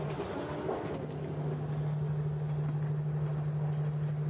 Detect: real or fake real